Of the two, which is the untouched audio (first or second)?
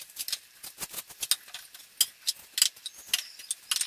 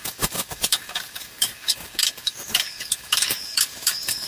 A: first